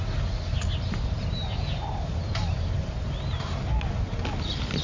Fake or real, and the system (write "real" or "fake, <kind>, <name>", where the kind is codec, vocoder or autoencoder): real